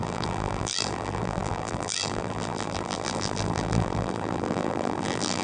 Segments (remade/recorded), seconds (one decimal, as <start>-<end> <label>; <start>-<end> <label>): 0.0-5.4 remade